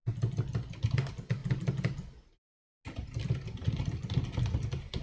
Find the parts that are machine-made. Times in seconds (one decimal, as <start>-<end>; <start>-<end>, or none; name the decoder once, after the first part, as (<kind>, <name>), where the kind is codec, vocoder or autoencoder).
none